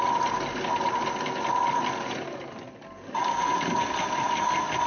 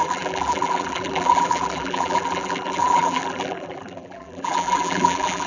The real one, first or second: first